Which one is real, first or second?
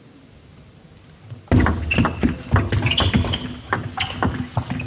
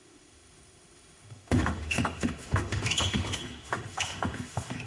first